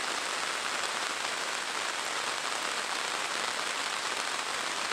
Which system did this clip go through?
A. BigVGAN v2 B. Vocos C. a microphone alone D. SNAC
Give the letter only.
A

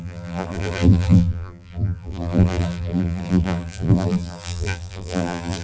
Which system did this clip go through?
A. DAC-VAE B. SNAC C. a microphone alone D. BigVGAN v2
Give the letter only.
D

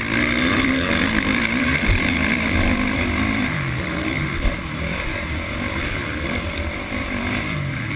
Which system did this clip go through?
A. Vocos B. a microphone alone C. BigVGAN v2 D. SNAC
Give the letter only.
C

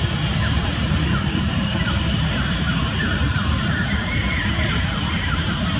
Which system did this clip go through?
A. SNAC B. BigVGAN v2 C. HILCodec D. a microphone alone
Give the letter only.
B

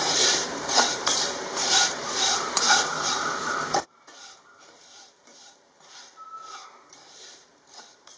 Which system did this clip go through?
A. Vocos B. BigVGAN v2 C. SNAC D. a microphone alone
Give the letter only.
B